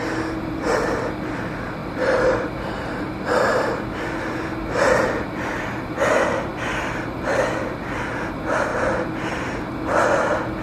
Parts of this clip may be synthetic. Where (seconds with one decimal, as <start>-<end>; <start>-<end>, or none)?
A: 1.8-4.0; 8.7-9.7

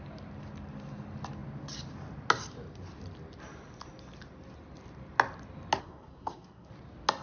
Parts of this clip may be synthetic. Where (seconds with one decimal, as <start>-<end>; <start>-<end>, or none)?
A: 5.8-6.7

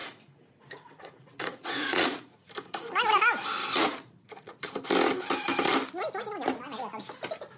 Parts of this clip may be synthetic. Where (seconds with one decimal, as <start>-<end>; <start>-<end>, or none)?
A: 0.0-2.5; 3.8-4.7